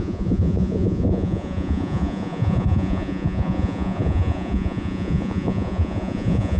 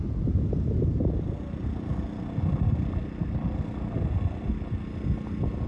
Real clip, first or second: second